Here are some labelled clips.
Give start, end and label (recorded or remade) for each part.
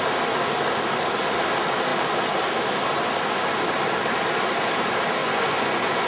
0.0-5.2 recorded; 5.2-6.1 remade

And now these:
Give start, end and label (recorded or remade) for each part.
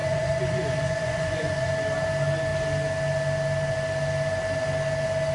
0.0-1.7 remade; 1.7-5.3 recorded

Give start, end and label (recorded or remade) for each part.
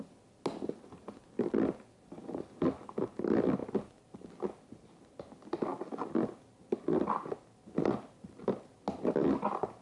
0.0-9.8 recorded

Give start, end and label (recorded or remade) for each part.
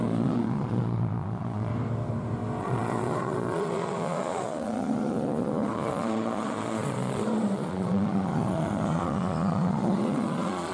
0.0-1.7 remade; 1.7-2.6 recorded; 2.6-10.7 remade